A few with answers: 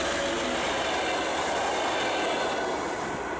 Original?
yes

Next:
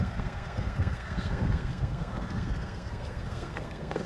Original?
no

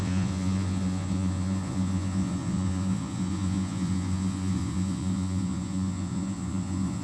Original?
no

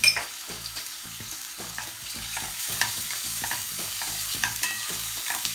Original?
no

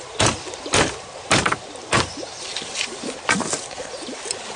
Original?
no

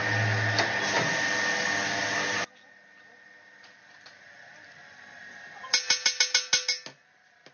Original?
yes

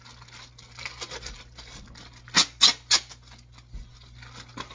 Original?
yes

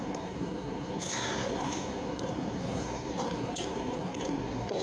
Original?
no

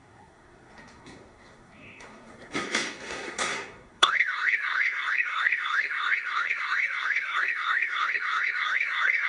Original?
no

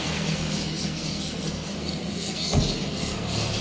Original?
no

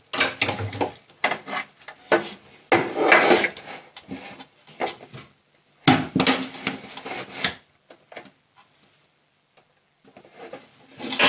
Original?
yes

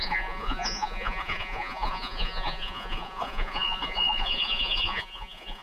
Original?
no